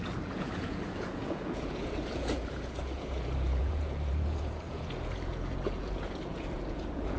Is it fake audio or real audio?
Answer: fake